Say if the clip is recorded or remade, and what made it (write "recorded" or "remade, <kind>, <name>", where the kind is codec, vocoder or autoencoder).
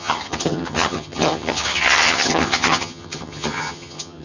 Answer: remade, vocoder, HiFi-GAN